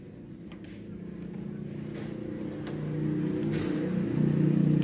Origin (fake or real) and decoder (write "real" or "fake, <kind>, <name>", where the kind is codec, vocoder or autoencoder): real